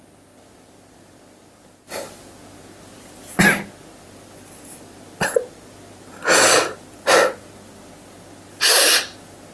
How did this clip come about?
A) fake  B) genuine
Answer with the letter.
B